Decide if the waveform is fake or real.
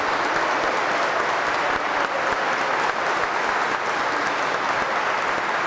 real